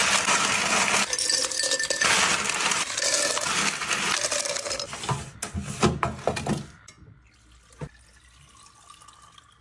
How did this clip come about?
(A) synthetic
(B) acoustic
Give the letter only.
B